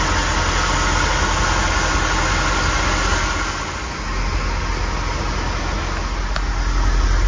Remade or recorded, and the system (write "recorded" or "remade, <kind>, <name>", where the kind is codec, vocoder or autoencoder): recorded